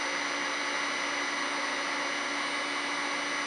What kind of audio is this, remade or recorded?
recorded